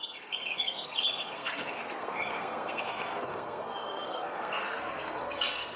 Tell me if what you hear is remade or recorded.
remade